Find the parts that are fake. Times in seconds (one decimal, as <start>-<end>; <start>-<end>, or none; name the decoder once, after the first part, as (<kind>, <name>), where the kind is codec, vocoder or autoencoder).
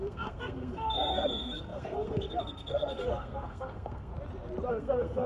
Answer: 0.0-4.1 (codec, SNAC); 4.7-5.3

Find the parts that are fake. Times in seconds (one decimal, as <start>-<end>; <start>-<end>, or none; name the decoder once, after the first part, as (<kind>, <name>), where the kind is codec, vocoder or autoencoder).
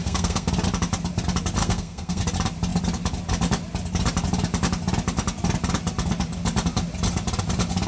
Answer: 0.0-0.5 (codec, SNAC); 1.6-2.2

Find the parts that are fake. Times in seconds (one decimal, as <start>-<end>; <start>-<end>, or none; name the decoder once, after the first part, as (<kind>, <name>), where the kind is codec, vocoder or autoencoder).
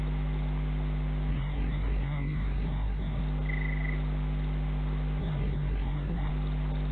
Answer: 1.3-3.2 (codec, SNAC); 5.2-6.3